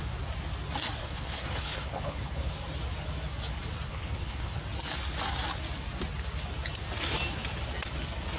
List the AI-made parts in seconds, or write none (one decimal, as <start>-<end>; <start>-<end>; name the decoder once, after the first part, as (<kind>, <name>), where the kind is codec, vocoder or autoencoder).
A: 1.0-2.5 (codec, HILCodec); 3.9-4.6